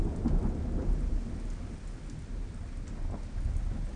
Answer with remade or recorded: recorded